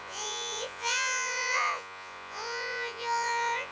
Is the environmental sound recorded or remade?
remade